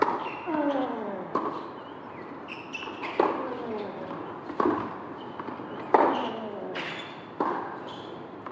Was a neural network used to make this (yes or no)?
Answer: no